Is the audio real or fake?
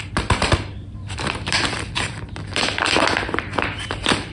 fake